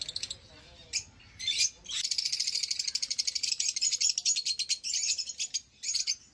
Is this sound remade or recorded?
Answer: recorded